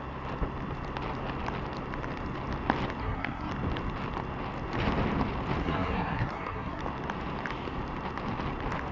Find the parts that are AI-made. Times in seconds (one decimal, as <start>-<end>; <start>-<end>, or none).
3.0-3.5; 5.6-6.8